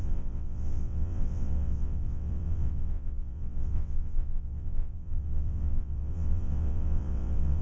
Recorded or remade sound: remade